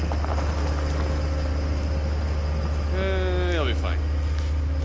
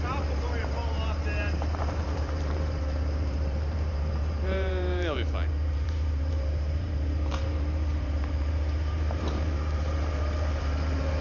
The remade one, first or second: second